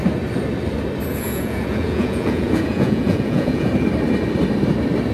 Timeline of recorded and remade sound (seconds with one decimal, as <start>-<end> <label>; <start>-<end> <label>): 0.0-1.1 recorded; 1.1-3.7 remade; 3.7-5.1 recorded